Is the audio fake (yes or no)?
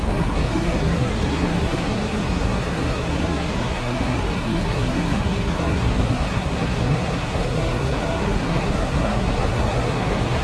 yes